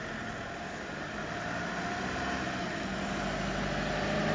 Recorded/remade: recorded